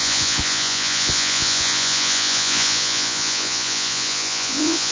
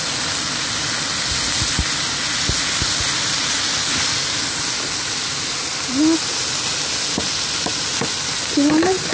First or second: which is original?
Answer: second